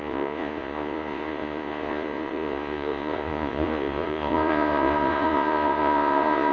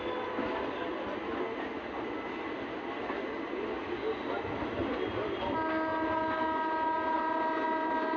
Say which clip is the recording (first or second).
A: second